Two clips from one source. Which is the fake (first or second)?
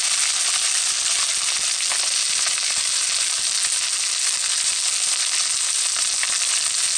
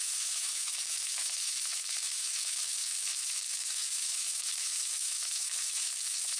second